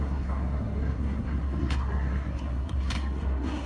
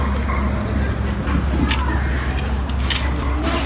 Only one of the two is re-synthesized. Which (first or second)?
first